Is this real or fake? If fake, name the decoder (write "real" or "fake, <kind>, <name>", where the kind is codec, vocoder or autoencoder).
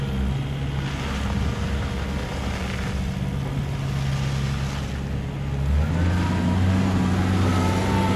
real